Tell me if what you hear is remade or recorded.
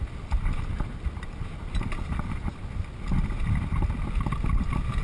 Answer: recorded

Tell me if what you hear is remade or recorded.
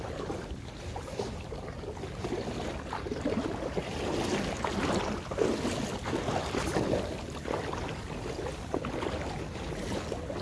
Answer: recorded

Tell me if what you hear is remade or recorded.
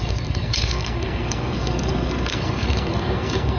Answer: remade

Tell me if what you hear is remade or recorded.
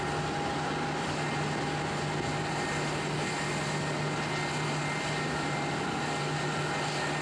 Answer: recorded